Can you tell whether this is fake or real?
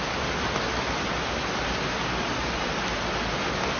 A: real